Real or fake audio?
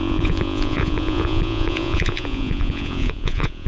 fake